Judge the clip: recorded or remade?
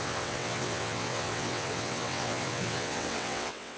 remade